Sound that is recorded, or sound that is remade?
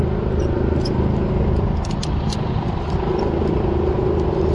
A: recorded